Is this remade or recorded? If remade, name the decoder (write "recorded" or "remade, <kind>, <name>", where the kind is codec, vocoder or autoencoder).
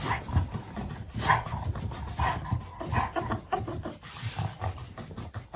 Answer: recorded